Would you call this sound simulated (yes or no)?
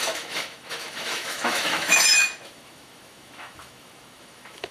yes